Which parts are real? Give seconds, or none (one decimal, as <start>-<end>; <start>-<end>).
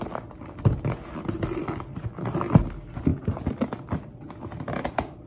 0.0-5.3